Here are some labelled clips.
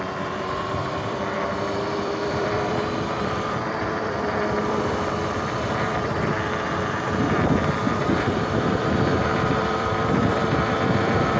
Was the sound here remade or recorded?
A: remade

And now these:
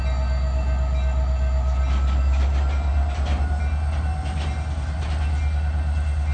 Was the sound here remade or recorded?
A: recorded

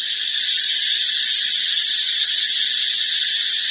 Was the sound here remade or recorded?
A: recorded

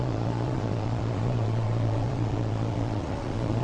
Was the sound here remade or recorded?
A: remade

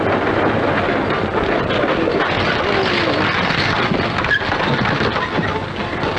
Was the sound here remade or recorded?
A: recorded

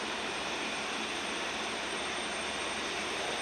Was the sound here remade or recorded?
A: remade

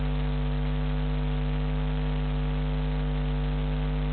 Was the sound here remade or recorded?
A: recorded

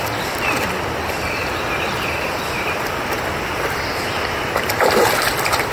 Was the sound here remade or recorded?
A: remade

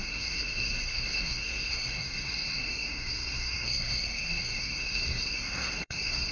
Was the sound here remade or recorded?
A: remade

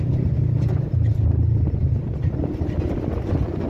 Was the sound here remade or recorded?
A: recorded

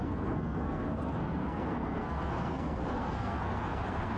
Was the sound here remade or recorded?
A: remade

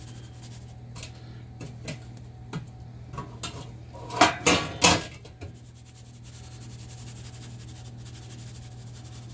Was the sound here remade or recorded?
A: recorded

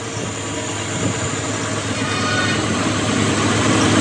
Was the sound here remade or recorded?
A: recorded